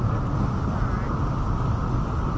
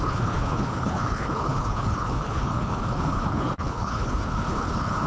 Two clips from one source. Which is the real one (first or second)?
first